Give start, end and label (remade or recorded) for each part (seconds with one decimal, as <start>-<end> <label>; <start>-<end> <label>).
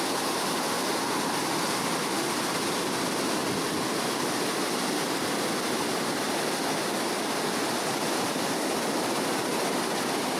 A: 0.0-10.4 recorded